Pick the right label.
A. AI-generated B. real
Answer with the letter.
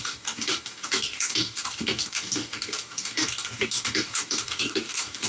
A